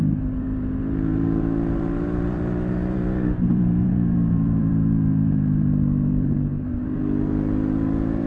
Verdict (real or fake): fake